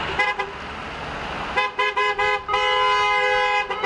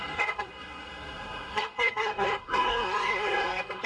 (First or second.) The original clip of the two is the first